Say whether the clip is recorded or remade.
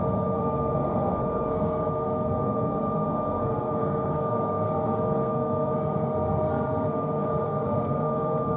remade